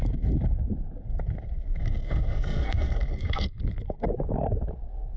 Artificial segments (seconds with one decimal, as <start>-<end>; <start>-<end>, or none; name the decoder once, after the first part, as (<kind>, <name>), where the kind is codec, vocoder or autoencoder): 1.8-3.6 (codec, SNAC)